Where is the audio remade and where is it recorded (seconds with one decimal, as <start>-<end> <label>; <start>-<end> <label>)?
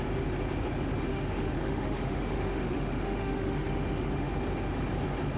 0.0-1.1 recorded; 1.1-4.3 remade; 4.3-5.4 recorded